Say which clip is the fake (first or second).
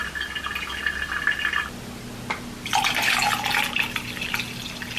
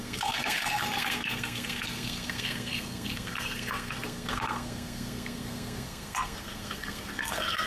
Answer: second